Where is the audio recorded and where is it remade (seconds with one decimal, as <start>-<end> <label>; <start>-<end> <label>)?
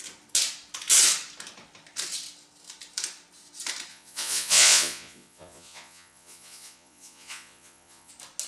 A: 0.0-3.9 recorded; 3.9-8.1 remade; 8.1-8.5 recorded